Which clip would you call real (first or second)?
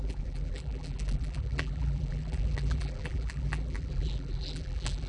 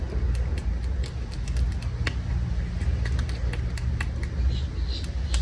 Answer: second